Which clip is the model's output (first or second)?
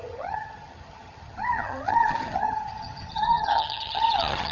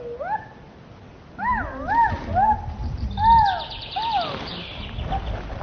first